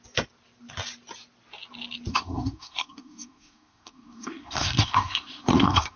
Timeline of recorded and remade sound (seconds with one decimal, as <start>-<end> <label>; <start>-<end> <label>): 0.0-2.1 recorded; 2.1-6.0 remade